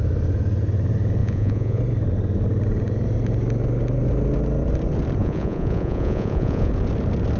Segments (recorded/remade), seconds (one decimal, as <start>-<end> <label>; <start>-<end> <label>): 0.0-1.2 recorded; 1.2-1.8 remade; 1.8-5.2 recorded; 5.2-6.7 remade; 6.7-7.4 recorded